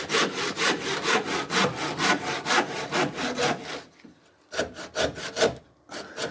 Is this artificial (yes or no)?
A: no